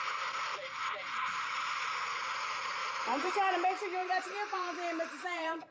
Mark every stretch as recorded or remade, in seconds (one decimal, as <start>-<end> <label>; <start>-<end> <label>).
0.0-2.8 recorded; 2.8-3.3 remade; 3.3-4.0 recorded; 4.0-5.7 remade